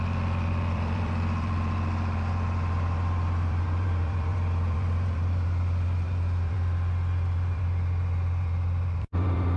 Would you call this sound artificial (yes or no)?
yes